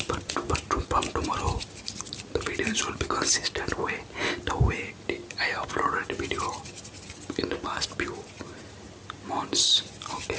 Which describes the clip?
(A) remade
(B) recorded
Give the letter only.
B